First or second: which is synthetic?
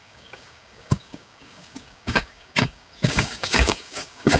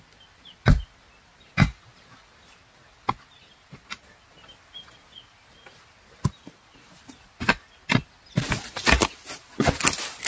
first